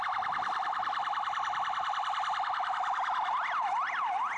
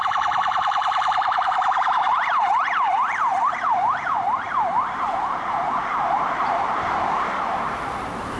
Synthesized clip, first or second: second